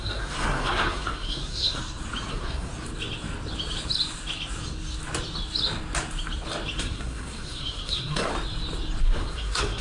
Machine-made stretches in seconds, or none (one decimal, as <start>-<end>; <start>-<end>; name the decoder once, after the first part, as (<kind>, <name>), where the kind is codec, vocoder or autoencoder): 0.0-1.8 (codec, SNAC); 2.3-2.7; 6.8-8.3; 9.0-9.8